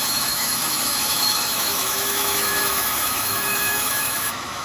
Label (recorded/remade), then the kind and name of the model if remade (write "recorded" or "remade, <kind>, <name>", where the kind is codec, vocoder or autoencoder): remade, autoencoder, DAC-VAE